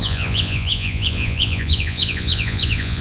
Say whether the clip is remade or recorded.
remade